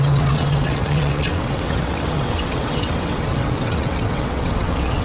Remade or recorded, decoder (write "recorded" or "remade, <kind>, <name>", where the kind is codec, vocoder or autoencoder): remade, vocoder, WaveNeXt